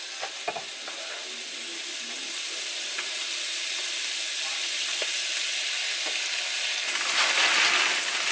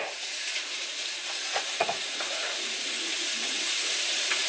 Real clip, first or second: first